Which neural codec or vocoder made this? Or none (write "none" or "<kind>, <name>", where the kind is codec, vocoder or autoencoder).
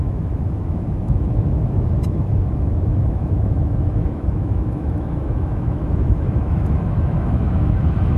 autoencoder, DAC-VAE